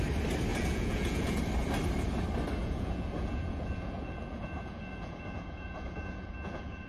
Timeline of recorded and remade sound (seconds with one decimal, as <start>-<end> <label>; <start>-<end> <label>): 0.0-0.5 recorded; 0.5-1.4 remade; 1.4-2.6 recorded; 2.6-6.9 remade